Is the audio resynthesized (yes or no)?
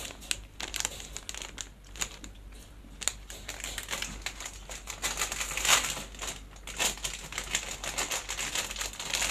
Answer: no